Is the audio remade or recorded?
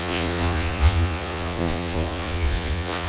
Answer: remade